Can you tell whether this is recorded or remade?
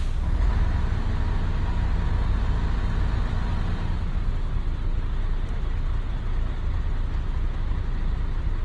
recorded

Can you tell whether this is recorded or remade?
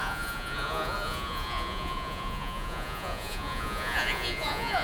remade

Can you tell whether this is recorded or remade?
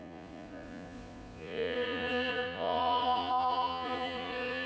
remade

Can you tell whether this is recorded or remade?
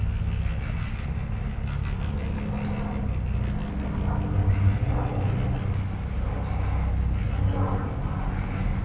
recorded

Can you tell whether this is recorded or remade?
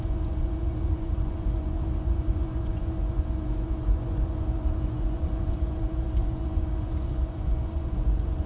remade